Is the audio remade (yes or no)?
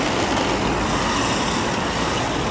no